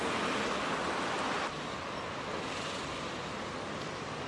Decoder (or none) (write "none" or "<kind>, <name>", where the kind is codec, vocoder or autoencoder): none